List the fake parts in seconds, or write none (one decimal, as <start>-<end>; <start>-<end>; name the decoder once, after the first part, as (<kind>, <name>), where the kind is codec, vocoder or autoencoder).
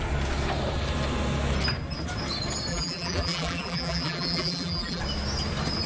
2.7-5.0 (vocoder, BigVGAN v2)